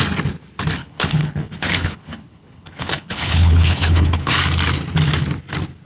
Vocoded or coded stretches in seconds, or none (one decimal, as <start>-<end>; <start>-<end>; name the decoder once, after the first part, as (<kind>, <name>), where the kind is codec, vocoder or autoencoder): 0.8-4.3 (codec, HILCodec)